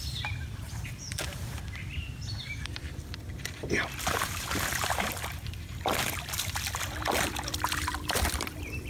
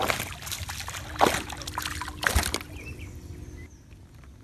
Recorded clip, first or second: second